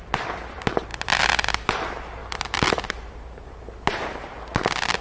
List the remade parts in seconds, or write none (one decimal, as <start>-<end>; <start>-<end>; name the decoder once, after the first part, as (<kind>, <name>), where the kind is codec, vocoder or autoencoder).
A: 2.2-3.1 (vocoder, BigVGAN v2)